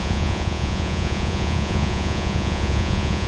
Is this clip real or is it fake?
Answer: fake